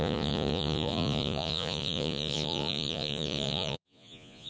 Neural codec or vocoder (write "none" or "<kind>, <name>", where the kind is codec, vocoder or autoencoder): vocoder, Vocos